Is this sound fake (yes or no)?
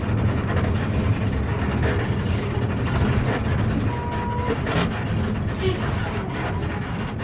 no